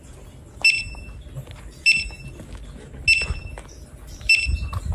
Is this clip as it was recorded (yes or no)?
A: yes